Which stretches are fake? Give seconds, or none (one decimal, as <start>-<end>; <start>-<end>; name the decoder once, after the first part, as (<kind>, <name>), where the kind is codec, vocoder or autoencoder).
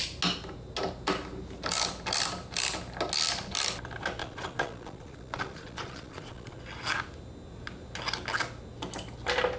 4.2-6.6 (vocoder, Vocos)